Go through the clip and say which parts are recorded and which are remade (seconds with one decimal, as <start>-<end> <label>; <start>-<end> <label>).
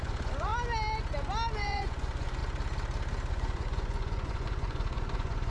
0.0-0.5 remade; 0.5-1.6 recorded; 1.6-2.4 remade; 2.4-3.3 recorded; 3.3-5.5 remade